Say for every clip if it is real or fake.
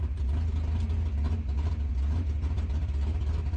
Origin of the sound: real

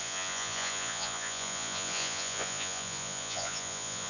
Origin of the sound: fake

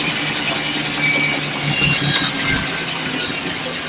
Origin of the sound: real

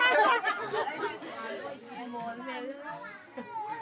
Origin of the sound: real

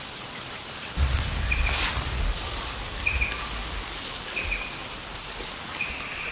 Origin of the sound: real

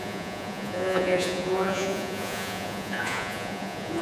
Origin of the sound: fake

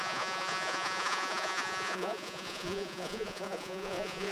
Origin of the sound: fake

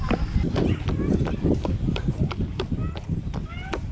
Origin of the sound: real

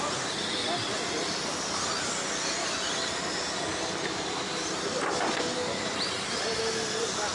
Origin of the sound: real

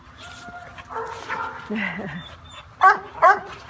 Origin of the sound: real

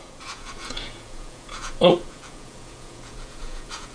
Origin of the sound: fake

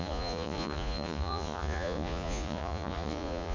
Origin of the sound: fake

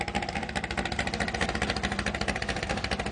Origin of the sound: real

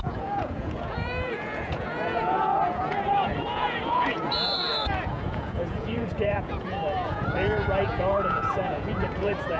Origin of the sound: fake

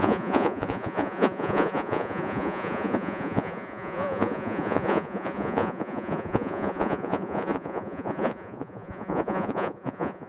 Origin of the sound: fake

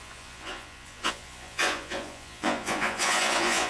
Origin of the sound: fake